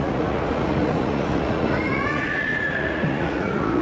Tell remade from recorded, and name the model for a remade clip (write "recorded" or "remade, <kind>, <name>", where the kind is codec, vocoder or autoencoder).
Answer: remade, vocoder, Vocos